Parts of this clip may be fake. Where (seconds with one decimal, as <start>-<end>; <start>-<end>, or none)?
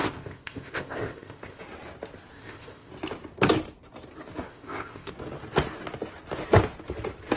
0.0-1.6; 2.3-2.9; 4.5-5.1